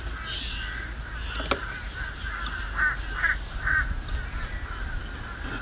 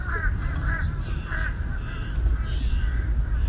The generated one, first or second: second